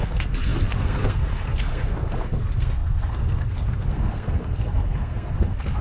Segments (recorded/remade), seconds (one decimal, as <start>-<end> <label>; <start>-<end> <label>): 0.0-5.8 remade